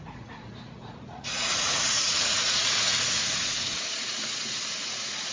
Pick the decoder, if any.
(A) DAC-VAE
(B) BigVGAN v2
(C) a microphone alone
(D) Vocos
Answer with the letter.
D